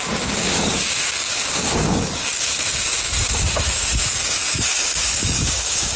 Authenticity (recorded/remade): remade